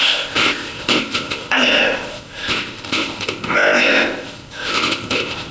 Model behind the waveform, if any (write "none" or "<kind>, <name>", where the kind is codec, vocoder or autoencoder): codec, ZipCodec